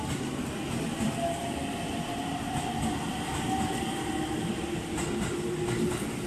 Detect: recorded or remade recorded